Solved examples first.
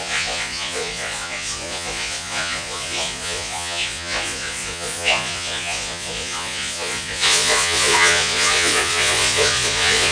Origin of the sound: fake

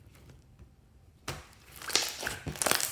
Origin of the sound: fake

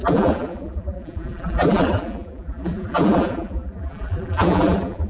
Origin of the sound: fake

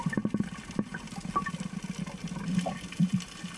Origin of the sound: real